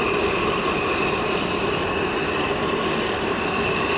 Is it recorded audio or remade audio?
recorded